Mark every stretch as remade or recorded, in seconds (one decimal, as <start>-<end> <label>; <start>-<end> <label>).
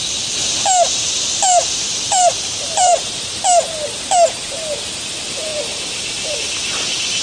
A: 0.0-0.4 remade; 0.4-1.0 recorded; 1.0-2.9 remade; 2.9-4.7 recorded; 4.7-7.2 remade